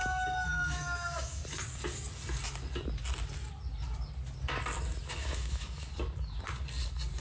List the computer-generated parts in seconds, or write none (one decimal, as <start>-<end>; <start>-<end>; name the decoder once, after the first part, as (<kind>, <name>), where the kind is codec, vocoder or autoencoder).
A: 0.0-1.4 (autoencoder, DAC-VAE); 5.1-5.9